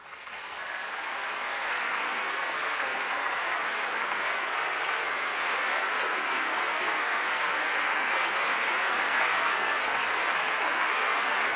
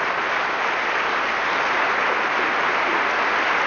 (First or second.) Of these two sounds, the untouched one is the second